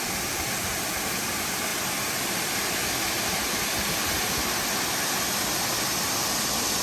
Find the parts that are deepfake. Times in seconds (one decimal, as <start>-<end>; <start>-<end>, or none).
none